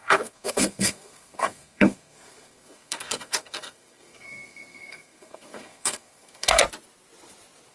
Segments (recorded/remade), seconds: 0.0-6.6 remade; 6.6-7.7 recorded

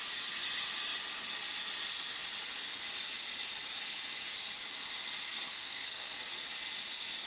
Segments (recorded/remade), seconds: 0.0-5.5 recorded; 5.5-6.2 remade; 6.2-7.3 recorded

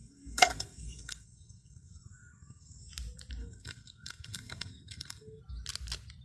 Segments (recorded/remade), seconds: 0.0-2.9 remade; 2.9-3.4 recorded; 3.4-5.4 remade; 5.4-6.2 recorded